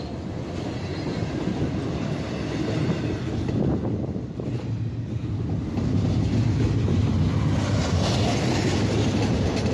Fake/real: real